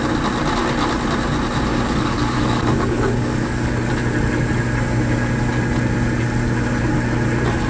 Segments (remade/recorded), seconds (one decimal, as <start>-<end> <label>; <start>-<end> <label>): 0.0-1.7 recorded; 1.7-3.9 remade; 3.9-7.7 recorded